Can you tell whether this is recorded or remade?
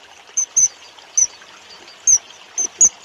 recorded